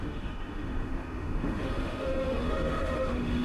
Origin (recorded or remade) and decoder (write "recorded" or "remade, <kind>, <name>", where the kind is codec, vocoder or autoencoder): remade, autoencoder, DAC-VAE